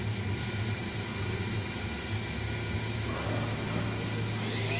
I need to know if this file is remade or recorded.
recorded